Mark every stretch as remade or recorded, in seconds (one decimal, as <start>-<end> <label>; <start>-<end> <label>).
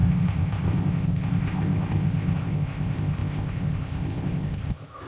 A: 0.0-5.1 remade